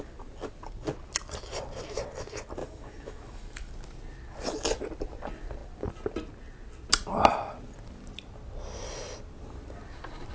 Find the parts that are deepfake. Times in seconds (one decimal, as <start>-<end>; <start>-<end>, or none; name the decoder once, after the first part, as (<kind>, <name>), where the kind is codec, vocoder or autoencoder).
2.6-3.7 (autoencoder, DAC-VAE)